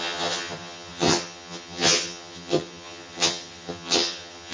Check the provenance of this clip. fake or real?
fake